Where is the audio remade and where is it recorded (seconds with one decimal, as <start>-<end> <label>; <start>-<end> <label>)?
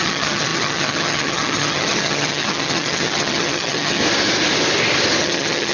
0.0-4.0 remade; 4.0-5.2 recorded; 5.2-5.7 remade